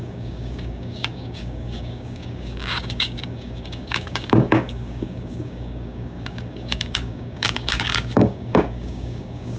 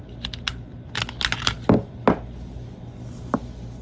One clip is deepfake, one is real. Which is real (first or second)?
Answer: second